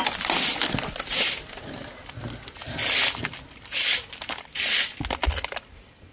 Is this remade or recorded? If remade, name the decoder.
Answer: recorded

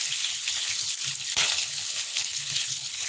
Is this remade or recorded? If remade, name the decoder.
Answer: remade, codec, HILCodec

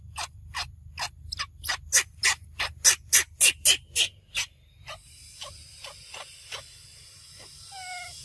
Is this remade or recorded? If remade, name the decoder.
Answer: recorded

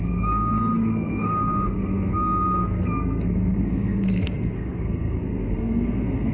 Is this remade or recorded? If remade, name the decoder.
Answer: remade, codec, SNAC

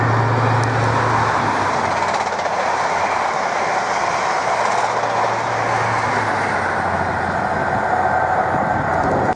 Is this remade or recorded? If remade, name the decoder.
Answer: recorded